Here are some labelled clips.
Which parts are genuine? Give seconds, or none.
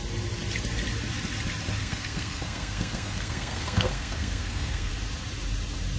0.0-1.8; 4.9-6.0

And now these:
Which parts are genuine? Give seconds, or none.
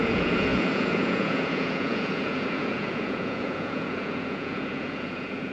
none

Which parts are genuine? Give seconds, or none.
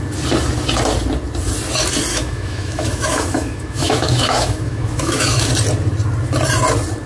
0.0-2.1; 5.5-7.1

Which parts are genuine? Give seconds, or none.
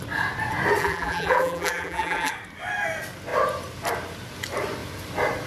0.0-0.8; 2.3-5.5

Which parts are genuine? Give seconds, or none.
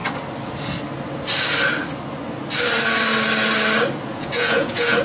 0.0-4.1